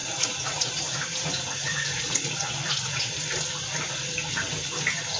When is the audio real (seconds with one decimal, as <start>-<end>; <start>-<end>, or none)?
3.1-5.2